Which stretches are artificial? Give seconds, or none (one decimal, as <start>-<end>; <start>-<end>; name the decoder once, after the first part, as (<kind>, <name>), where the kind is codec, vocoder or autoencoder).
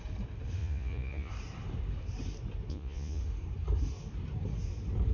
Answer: 0.6-1.3 (vocoder, Vocos); 2.7-3.2